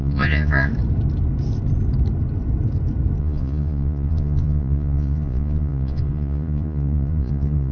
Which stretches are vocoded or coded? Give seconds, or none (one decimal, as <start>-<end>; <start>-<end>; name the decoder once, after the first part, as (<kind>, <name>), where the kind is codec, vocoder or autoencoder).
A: 0.0-0.7 (vocoder, Vocos); 3.2-7.7